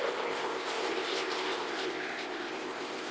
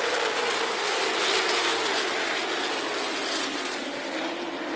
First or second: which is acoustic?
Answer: second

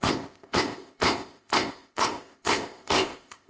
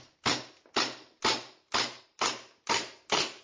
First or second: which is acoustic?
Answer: second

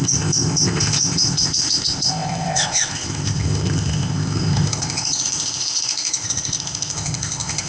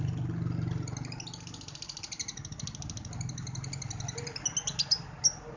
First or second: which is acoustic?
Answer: second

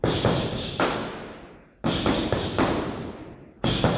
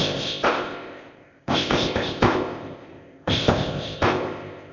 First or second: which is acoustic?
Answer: first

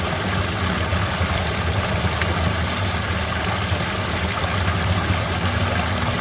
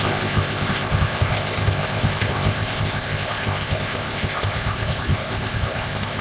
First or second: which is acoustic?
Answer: first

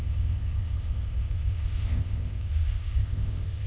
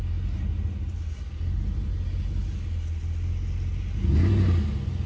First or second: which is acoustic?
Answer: second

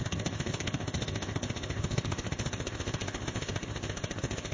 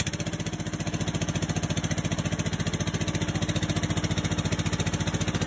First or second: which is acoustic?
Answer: second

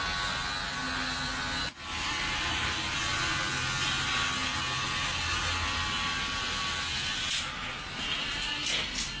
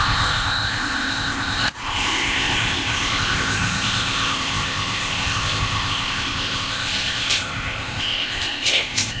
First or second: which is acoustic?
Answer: first